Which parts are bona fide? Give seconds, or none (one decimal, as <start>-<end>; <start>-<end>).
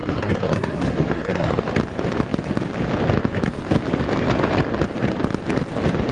1.6-6.1